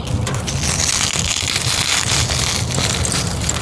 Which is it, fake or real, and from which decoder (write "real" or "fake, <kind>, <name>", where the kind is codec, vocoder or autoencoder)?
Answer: real